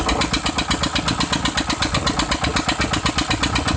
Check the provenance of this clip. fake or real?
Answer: real